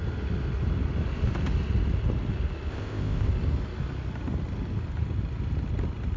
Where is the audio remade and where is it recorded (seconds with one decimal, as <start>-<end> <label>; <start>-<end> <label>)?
0.0-2.7 recorded; 2.7-3.3 remade; 3.3-6.2 recorded